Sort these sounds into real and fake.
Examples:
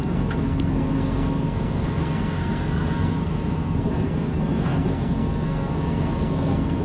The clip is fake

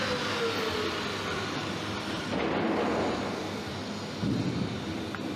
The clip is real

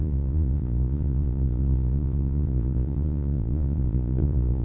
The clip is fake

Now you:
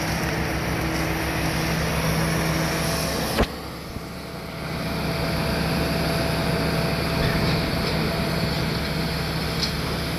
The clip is real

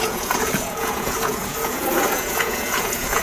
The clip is fake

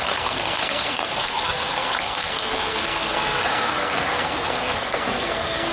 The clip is fake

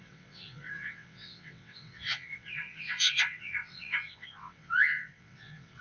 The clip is fake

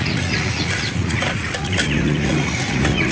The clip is fake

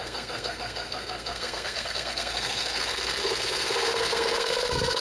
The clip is fake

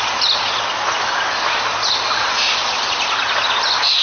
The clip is real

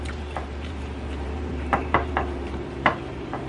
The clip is fake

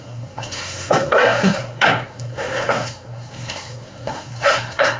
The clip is fake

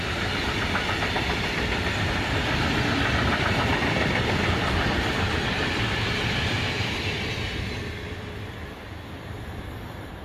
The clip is real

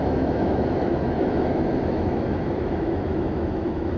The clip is fake